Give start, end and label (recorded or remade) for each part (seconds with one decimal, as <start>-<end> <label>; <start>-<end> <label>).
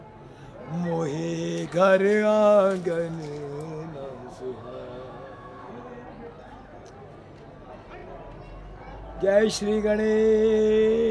0.0-1.5 recorded; 1.5-5.7 remade; 5.7-11.1 recorded